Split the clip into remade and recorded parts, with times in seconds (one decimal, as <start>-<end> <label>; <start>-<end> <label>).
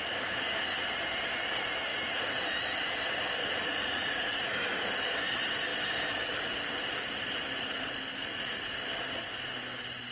0.0-3.6 recorded; 3.6-4.5 remade; 4.5-10.1 recorded